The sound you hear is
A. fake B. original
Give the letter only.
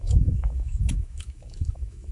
A